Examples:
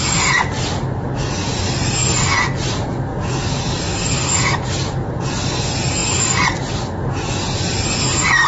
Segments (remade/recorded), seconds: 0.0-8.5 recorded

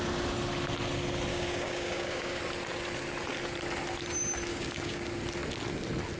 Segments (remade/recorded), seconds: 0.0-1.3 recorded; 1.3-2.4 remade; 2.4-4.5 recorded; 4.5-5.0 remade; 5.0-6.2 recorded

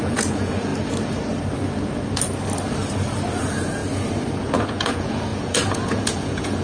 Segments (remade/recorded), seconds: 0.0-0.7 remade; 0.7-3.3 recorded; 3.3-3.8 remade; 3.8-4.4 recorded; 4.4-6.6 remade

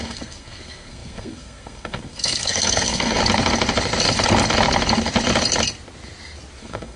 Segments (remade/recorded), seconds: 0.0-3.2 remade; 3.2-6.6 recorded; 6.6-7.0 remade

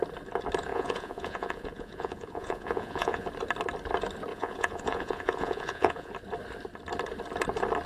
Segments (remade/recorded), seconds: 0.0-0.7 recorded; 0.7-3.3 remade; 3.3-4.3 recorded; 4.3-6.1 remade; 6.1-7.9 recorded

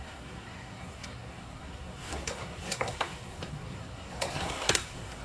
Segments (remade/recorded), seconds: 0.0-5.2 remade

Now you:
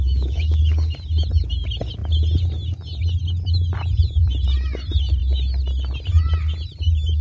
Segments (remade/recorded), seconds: 0.0-0.6 remade; 0.6-7.2 recorded